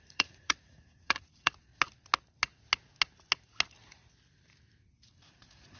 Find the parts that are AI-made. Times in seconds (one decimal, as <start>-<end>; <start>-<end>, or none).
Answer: 0.0-1.7; 5.2-5.8